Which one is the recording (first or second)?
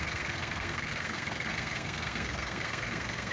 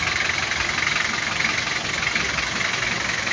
second